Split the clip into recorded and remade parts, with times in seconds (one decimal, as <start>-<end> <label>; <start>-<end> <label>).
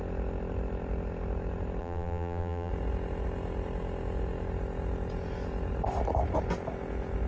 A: 0.0-1.8 recorded; 1.8-2.7 remade; 2.7-7.3 recorded